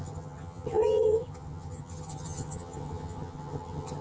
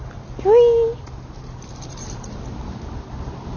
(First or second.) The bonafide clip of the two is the second